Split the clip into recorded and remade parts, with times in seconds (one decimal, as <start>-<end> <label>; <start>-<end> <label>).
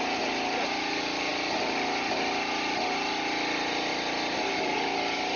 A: 0.0-5.4 recorded